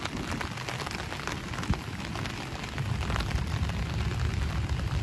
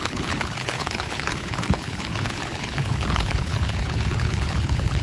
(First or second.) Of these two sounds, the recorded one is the first